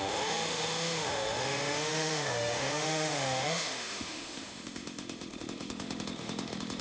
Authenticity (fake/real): fake